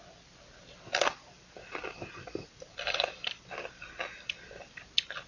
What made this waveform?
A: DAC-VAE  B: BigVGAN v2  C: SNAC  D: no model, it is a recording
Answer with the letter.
D